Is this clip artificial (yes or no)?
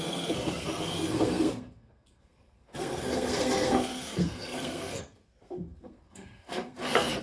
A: yes